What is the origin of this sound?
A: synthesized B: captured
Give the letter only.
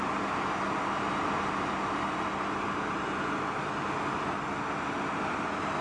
B